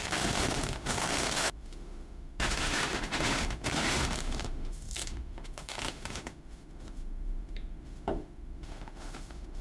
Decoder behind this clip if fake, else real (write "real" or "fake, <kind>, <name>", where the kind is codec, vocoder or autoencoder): fake, autoencoder, DAC-VAE